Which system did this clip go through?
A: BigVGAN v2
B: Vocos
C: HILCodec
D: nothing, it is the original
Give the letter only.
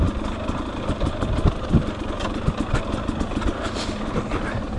D